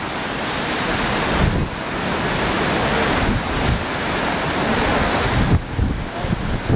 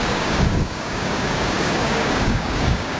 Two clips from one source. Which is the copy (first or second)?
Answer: second